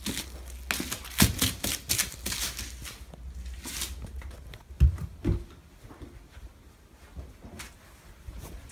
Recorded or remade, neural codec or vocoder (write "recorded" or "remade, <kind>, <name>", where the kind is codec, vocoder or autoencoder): recorded